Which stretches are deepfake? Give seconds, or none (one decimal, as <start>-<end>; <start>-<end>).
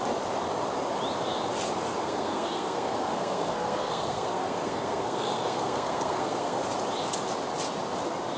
2.0-6.6